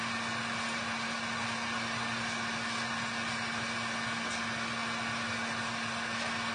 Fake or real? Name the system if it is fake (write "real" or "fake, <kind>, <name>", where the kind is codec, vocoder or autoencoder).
real